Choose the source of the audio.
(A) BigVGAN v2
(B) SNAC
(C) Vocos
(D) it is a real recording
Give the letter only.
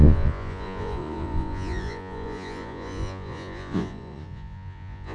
C